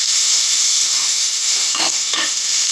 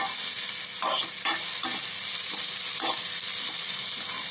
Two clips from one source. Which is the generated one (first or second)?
first